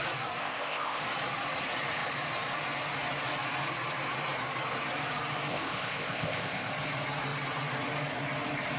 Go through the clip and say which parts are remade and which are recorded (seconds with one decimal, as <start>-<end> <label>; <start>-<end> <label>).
0.0-0.4 recorded; 0.4-1.0 remade; 1.0-5.5 recorded; 5.5-6.7 remade; 6.7-8.8 recorded